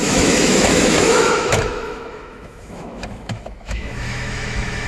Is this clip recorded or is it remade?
remade